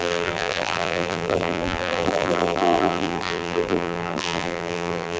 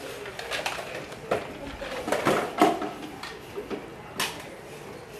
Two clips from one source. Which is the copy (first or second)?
first